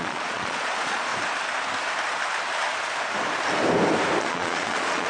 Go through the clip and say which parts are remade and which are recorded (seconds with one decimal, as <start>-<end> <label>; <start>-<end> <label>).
0.0-1.1 remade; 1.1-4.2 recorded; 4.2-5.1 remade